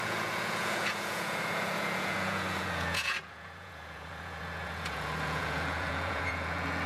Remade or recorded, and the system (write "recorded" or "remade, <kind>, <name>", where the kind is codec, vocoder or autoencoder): remade, vocoder, Vocos